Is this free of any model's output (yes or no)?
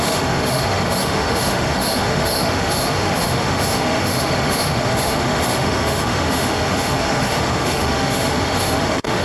no